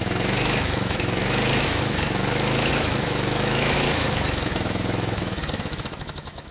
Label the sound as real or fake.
fake